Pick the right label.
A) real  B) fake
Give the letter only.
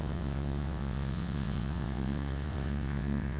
B